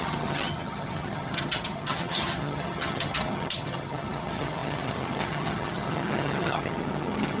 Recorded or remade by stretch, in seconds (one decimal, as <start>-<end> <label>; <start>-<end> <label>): 0.0-7.4 remade